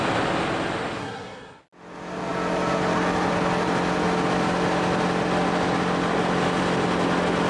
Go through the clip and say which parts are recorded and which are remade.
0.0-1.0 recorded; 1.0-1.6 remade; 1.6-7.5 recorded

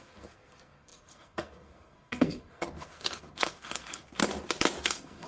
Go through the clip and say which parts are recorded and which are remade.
0.0-4.2 remade; 4.2-4.8 recorded; 4.8-5.3 remade